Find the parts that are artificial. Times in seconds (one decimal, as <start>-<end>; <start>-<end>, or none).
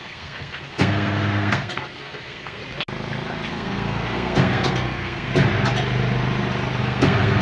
0.0-2.6; 3.5-5.3; 6.8-7.4